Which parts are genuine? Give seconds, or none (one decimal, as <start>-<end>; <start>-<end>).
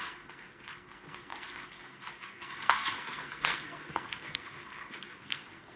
none